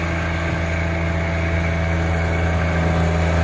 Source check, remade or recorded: recorded